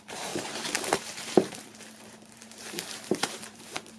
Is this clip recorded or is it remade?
remade